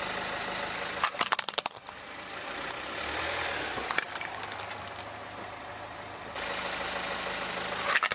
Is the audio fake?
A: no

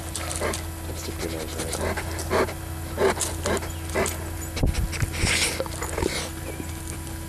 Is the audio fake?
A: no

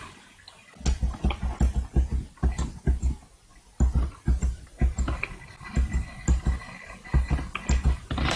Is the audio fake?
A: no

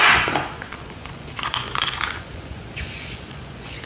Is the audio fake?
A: yes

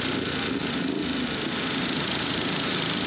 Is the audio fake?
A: no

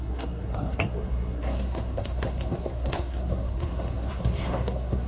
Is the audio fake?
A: yes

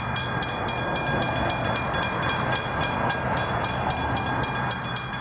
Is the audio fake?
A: no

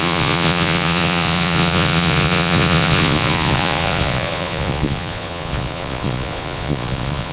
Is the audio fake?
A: yes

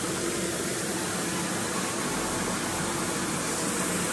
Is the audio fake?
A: no